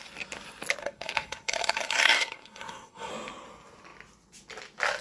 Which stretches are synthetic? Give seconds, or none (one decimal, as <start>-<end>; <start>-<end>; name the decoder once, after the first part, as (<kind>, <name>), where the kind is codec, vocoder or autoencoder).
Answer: 0.8-3.1 (codec, SNAC)